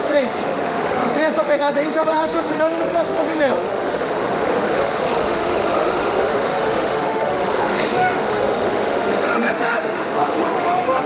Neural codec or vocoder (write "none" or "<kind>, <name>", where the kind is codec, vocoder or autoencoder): autoencoder, DAC-VAE